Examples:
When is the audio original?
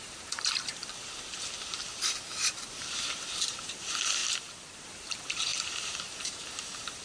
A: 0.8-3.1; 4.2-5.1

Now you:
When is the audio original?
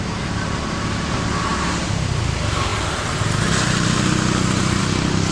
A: 0.0-5.3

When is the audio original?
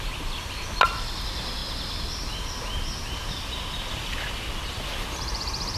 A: 0.0-5.8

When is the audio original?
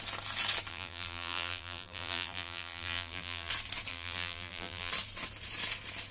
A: 0.0-0.7; 3.5-3.9; 4.9-6.1